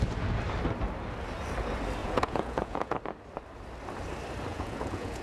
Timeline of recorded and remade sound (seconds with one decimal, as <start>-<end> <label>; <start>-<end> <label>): 0.0-2.0 recorded; 2.0-3.0 remade; 3.0-4.5 recorded; 4.5-5.2 remade